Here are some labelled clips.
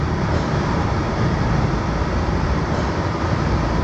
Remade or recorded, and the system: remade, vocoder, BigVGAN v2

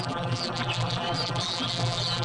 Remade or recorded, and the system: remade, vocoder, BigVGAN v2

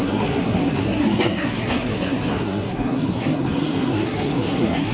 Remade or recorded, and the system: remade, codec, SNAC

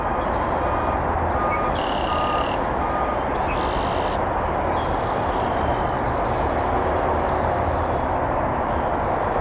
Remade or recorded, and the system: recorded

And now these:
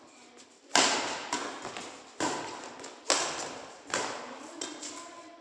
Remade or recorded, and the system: recorded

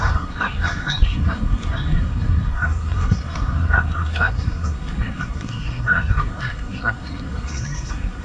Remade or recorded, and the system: remade, codec, SNAC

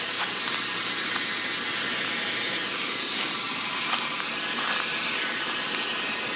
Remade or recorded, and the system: recorded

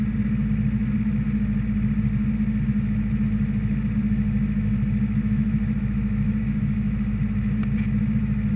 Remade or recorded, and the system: recorded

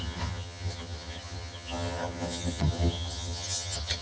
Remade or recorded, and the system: remade, vocoder, HiFi-GAN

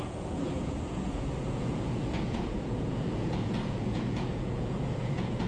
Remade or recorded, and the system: remade, vocoder, Vocos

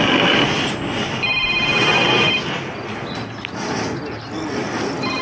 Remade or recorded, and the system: recorded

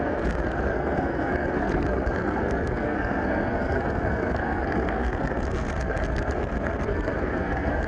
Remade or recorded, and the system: remade, codec, SNAC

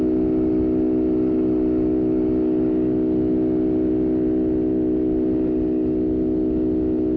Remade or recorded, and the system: recorded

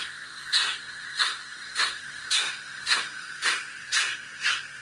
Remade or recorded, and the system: remade, codec, SNAC